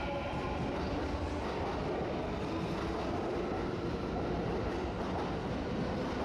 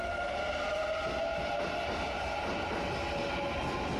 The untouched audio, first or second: second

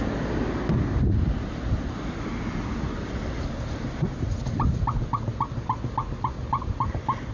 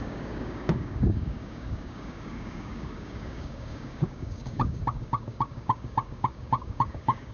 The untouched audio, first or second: first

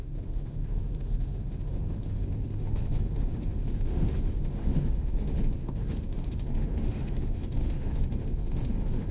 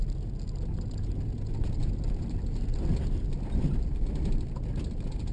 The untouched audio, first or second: second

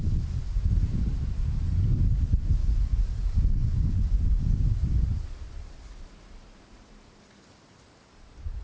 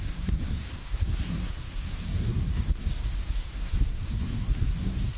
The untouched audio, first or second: first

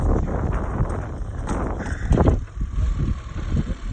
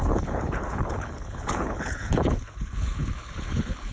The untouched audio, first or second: first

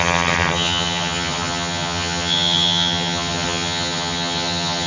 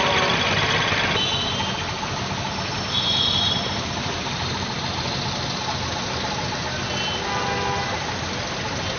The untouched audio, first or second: second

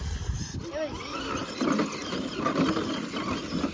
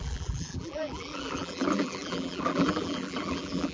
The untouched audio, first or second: first